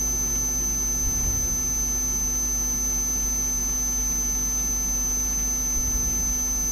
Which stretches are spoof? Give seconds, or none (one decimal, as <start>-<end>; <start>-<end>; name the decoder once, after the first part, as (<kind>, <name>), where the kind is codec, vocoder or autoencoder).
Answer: none